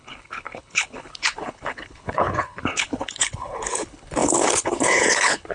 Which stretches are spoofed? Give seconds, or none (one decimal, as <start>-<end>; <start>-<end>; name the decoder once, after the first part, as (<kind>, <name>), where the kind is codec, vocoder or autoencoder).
0.0-5.5 (codec, HILCodec)